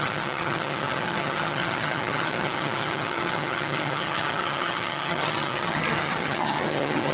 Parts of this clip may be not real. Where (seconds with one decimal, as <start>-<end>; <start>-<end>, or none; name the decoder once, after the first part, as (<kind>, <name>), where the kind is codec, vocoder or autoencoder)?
0.0-7.1 (vocoder, HiFi-GAN)